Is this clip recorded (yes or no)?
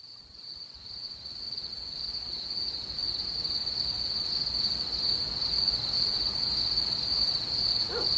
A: yes